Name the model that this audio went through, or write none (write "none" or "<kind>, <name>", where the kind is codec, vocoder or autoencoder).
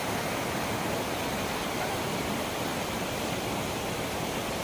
none